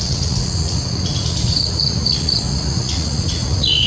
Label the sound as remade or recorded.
remade